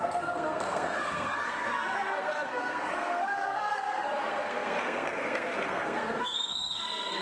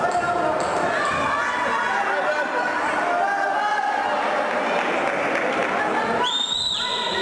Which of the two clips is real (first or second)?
second